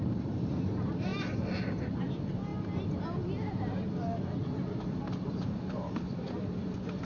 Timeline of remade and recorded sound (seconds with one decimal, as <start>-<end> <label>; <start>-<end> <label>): 0.0-1.1 remade; 1.1-2.1 recorded; 2.1-2.5 remade; 2.5-5.3 recorded; 5.3-7.0 remade